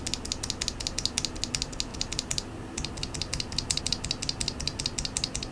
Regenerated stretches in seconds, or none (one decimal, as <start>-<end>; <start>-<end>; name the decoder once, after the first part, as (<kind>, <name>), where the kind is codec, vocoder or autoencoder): 1.9-3.8 (vocoder, BigVGAN v2)